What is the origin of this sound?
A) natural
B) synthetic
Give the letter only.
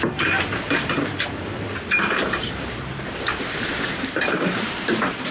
B